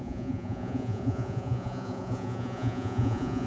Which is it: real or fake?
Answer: fake